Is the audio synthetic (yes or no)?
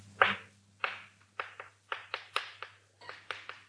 no